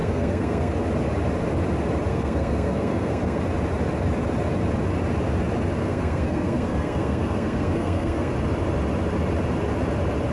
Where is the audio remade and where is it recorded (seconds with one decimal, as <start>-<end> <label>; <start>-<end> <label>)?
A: 0.0-0.7 remade; 0.7-2.1 recorded; 2.1-3.4 remade; 3.4-5.8 recorded; 5.8-8.3 remade; 8.3-10.3 recorded